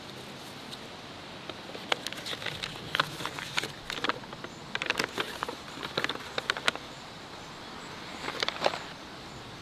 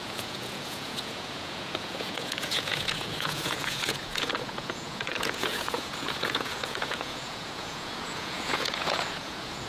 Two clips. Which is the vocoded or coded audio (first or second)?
second